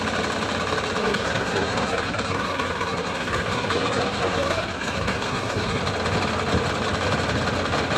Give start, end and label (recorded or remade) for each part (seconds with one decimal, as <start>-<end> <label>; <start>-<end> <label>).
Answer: 0.0-1.0 recorded; 1.0-5.8 remade; 5.8-8.0 recorded